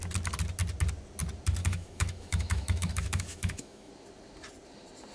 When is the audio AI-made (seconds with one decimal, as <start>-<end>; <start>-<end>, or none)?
1.6-3.9